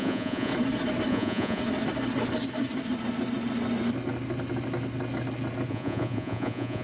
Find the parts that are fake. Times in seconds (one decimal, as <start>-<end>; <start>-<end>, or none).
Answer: 0.0-0.5; 1.1-1.6; 5.7-6.8